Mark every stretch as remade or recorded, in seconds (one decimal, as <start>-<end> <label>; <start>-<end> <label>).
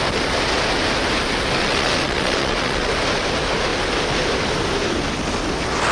0.0-1.6 recorded; 1.6-2.9 remade; 2.9-5.9 recorded